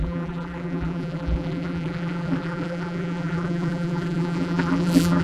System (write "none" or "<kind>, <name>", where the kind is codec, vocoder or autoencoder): vocoder, BigVGAN v2